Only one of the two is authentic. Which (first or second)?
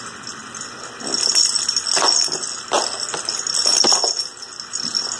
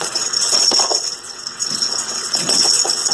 first